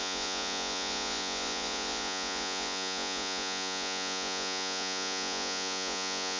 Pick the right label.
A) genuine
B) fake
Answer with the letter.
B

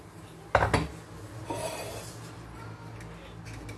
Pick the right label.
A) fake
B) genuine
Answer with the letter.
B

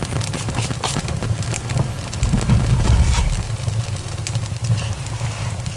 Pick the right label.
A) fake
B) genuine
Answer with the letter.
B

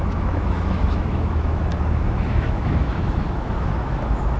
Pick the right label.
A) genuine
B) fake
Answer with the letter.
B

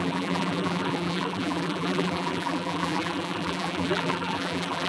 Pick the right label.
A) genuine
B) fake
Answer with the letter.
B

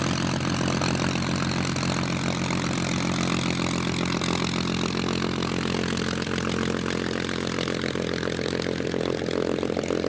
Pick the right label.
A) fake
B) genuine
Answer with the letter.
B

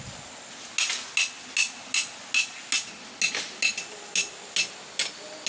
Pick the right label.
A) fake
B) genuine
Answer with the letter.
B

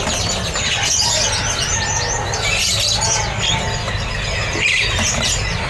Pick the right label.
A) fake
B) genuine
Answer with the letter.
B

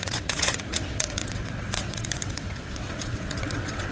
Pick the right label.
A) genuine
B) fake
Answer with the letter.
B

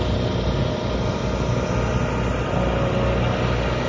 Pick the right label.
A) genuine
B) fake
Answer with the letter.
A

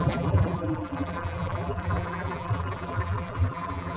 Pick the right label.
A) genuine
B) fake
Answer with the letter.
B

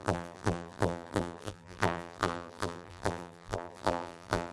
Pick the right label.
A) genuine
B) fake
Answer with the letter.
B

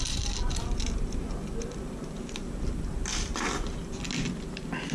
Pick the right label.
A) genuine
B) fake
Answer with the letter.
A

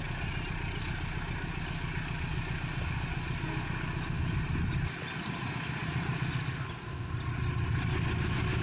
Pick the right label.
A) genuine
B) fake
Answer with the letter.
A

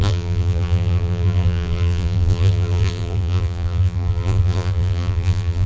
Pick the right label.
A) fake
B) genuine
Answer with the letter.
A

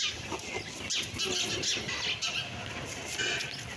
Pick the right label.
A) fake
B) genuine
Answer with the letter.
B